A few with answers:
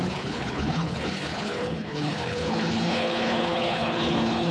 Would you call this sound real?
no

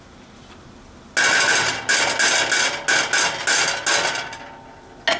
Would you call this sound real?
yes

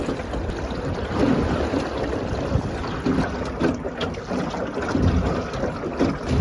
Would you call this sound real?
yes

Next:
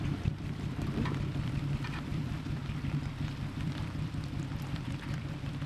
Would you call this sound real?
no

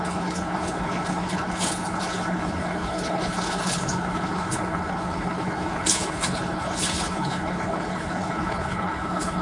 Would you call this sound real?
no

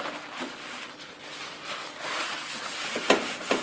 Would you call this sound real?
yes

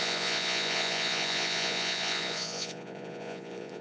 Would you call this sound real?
no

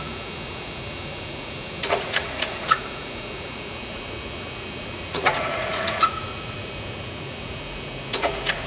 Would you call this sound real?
no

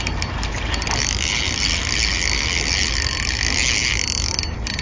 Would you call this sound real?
yes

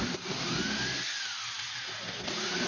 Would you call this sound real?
yes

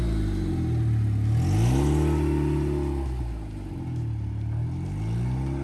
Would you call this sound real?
yes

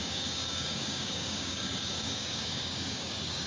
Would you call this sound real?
no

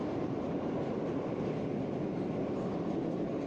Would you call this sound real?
yes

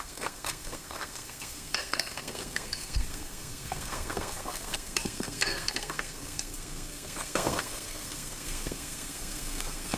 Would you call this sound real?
no